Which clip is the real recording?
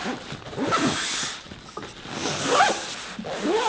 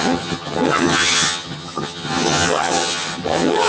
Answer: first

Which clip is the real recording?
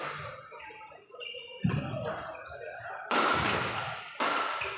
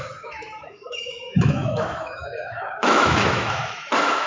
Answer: first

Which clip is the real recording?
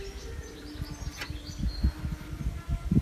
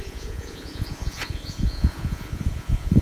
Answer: first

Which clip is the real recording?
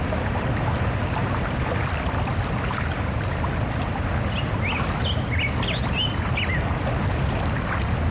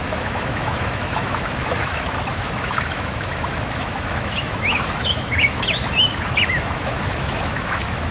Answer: first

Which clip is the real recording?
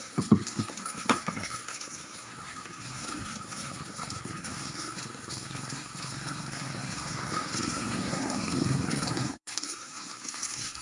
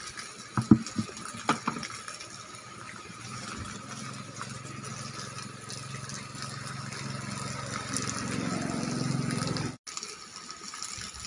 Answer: second